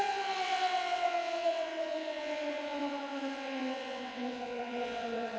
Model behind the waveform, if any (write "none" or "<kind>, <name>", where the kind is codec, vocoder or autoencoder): vocoder, WaveNeXt